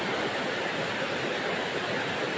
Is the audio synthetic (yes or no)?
no